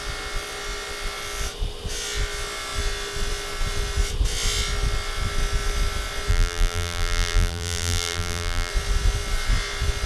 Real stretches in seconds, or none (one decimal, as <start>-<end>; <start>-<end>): 0.0-6.3; 8.7-10.1